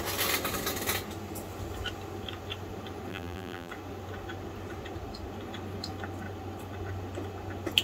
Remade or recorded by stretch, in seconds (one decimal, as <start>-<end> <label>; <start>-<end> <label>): 0.0-3.1 recorded; 3.1-3.7 remade; 3.7-7.8 recorded